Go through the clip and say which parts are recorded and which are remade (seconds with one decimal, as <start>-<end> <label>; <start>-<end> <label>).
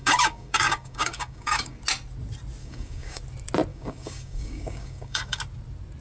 0.0-1.8 remade; 1.8-2.6 recorded; 2.6-3.2 remade; 3.2-3.7 recorded; 3.7-5.4 remade; 5.4-6.0 recorded